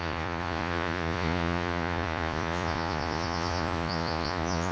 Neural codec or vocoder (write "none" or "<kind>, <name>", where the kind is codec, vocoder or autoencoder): vocoder, Vocos